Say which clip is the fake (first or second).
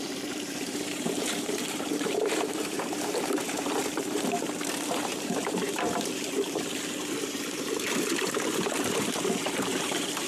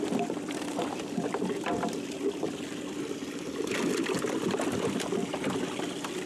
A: first